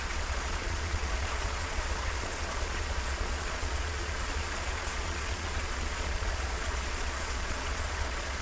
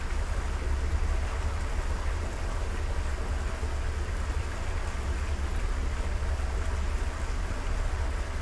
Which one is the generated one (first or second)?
first